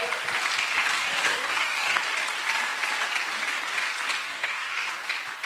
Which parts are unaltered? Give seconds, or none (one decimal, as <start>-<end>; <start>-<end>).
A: 0.0-0.9; 2.0-4.2; 4.9-5.5